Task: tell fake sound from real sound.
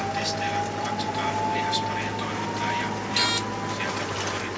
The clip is real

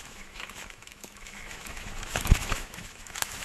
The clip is fake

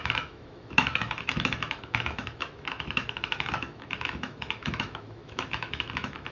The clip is fake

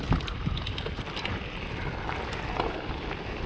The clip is real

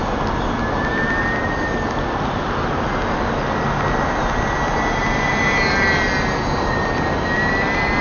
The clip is real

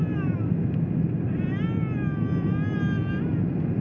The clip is real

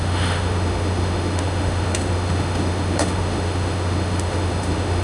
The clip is fake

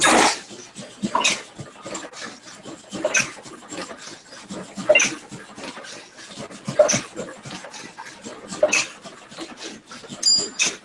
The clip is real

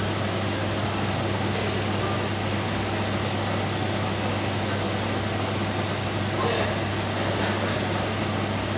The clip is real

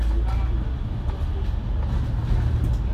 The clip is real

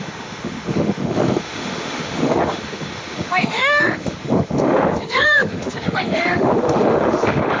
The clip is fake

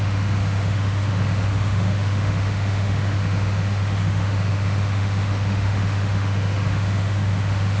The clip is fake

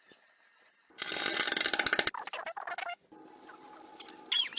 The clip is real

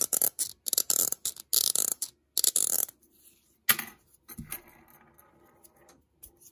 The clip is real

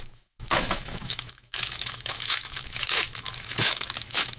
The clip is fake